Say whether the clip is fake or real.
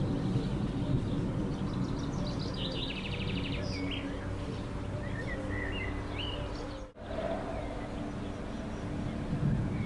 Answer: real